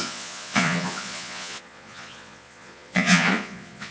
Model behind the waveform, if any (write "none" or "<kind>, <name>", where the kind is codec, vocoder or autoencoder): vocoder, Vocos